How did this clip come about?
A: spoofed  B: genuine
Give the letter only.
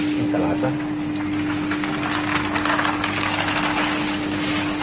B